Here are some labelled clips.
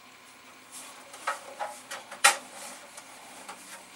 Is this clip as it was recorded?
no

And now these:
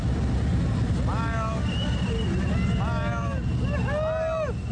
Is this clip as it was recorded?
yes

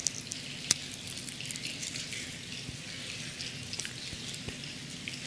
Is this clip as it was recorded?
yes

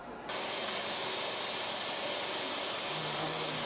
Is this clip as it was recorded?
yes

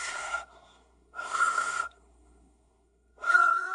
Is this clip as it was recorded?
no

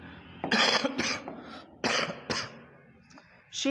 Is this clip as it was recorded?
yes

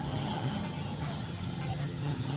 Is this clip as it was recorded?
no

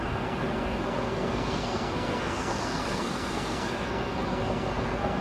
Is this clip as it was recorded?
no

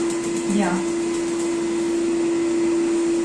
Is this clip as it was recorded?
yes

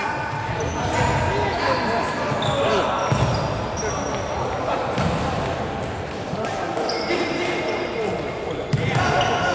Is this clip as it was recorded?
yes